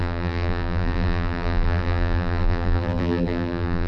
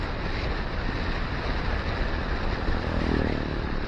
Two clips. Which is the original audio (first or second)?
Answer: second